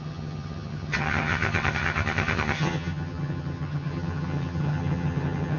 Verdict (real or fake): fake